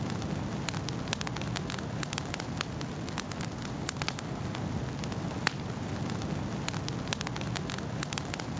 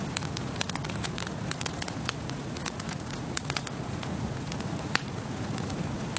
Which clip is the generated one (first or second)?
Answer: second